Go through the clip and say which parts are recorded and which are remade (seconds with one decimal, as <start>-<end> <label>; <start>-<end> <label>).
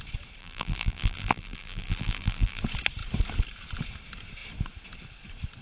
0.0-0.4 recorded; 0.4-2.6 remade; 2.6-5.6 recorded